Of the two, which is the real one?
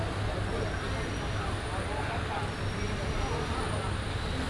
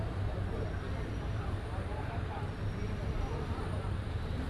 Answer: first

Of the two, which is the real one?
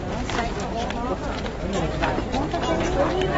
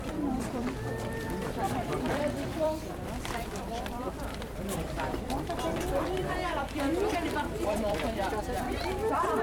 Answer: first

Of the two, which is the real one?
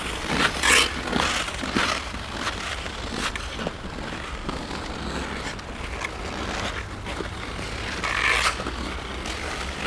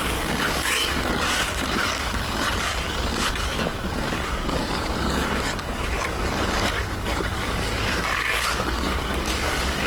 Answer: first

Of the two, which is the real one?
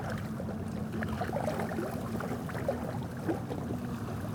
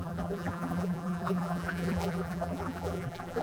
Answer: first